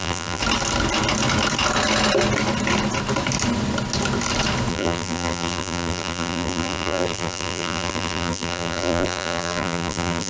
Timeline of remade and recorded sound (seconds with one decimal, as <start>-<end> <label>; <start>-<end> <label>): 0.0-0.4 remade; 0.4-4.7 recorded; 4.7-10.3 remade